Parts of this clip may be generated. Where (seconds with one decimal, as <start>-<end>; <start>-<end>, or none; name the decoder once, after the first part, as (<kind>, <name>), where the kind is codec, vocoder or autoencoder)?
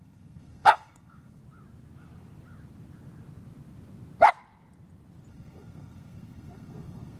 0.0-1.4 (codec, SNAC); 5.3-7.2